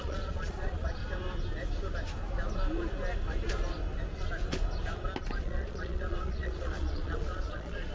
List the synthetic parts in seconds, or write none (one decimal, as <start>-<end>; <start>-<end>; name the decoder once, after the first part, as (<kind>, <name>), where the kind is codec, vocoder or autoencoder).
0.0-1.0 (vocoder, Vocos); 5.4-7.9